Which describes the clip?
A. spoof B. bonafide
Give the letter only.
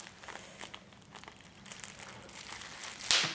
B